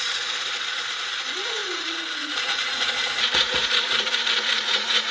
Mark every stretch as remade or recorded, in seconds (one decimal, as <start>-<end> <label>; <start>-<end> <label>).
0.0-5.1 remade